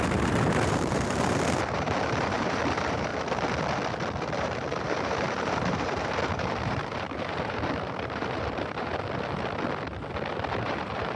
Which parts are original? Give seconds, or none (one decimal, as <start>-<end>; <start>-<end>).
3.1-4.2; 8.9-10.3